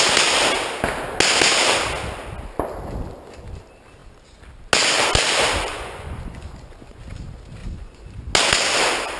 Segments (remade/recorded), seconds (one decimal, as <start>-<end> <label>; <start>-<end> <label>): 0.0-5.7 recorded; 5.7-7.0 remade; 7.0-7.6 recorded; 7.6-8.3 remade; 8.3-9.2 recorded